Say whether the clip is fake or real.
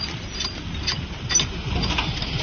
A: real